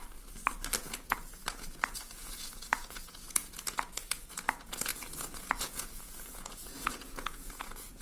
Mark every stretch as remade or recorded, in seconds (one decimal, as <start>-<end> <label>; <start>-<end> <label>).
0.0-0.8 recorded; 0.8-8.0 remade